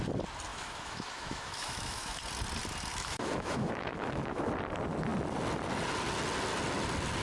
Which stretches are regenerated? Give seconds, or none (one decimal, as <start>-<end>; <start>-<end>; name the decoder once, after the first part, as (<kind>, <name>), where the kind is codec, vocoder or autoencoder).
0.5-2.2 (autoencoder, DAC-VAE); 2.9-4.5